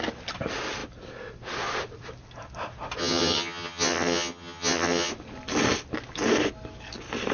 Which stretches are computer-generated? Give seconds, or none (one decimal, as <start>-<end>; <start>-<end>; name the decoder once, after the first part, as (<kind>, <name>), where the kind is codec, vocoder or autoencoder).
3.0-5.1 (vocoder, HiFi-GAN)